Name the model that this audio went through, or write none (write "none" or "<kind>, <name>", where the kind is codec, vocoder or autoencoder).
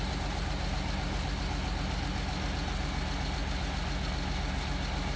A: none